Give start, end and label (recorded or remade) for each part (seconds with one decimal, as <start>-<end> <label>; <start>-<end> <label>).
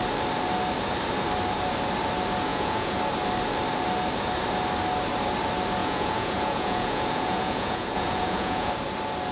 0.0-2.5 recorded; 2.5-3.0 remade; 3.0-5.8 recorded; 5.8-8.7 remade; 8.7-9.3 recorded